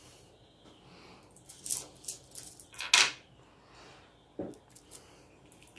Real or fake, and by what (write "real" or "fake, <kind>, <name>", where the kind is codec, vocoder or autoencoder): real